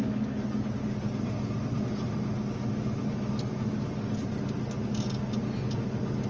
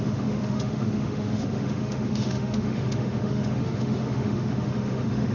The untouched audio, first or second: first